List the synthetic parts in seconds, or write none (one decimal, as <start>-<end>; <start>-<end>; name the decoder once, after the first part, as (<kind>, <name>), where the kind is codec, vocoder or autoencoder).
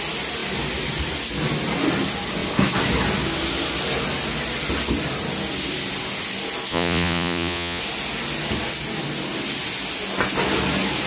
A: 6.7-7.8 (vocoder, Vocos)